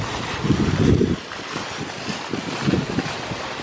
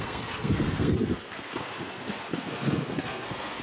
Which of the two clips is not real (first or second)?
second